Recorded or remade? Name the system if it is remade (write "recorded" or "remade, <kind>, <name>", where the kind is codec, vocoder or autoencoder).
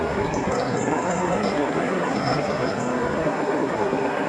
remade, codec, SNAC